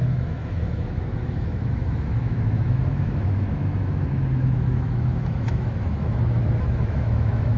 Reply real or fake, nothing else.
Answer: fake